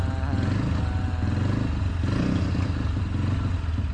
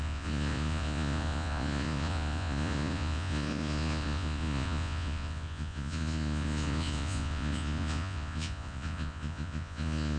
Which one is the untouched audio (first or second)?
first